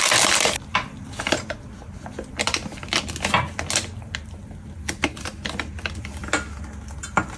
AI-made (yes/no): no